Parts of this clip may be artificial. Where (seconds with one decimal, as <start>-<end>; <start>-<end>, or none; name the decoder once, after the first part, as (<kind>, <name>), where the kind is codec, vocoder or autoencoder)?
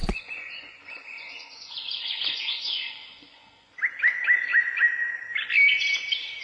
0.0-3.7 (vocoder, Vocos)